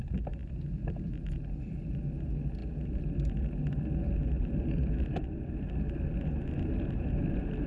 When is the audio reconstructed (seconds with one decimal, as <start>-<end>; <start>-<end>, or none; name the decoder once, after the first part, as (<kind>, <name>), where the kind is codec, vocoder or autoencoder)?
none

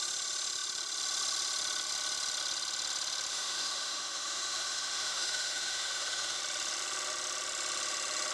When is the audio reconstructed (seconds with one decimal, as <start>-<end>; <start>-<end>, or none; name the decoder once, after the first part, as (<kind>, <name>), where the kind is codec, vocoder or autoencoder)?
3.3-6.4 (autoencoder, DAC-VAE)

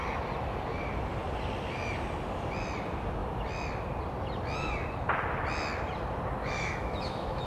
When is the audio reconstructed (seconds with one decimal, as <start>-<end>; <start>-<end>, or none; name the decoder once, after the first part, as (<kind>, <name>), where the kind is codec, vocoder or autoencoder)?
6.4-7.5 (autoencoder, DAC-VAE)

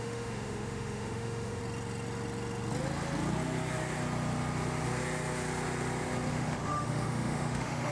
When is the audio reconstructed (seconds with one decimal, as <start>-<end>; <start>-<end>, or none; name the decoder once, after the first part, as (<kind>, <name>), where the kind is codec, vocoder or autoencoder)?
0.0-1.6 (autoencoder, DAC-VAE); 6.3-7.9

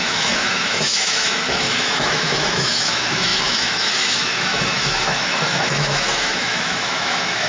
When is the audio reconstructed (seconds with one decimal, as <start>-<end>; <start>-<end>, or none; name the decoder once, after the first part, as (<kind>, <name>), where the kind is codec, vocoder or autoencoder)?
0.0-7.5 (autoencoder, DAC-VAE)

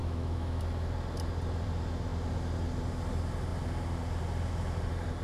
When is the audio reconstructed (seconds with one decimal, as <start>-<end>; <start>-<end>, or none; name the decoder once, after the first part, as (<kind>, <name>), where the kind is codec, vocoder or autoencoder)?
0.0-0.6 (autoencoder, DAC-VAE)

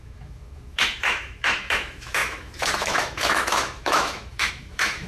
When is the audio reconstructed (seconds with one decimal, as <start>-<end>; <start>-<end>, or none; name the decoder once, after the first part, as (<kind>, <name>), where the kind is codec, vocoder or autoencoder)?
0.0-5.1 (autoencoder, DAC-VAE)